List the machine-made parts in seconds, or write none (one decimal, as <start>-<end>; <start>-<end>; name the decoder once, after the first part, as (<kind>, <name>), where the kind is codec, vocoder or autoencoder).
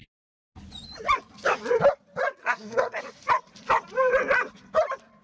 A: 2.4-3.0 (codec, SNAC)